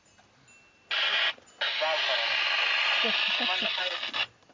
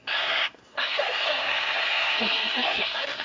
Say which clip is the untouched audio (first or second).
first